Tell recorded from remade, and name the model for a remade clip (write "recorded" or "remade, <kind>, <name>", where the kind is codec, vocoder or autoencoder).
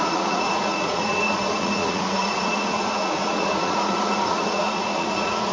remade, vocoder, Vocos